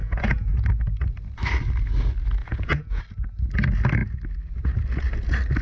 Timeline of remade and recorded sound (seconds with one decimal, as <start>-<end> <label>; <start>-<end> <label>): 0.0-0.5 remade; 0.5-2.4 recorded; 2.4-3.0 remade; 3.0-5.6 recorded